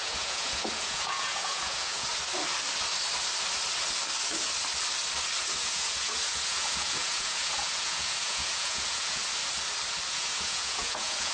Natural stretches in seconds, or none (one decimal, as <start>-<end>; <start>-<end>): 2.1-5.4; 9.2-10.1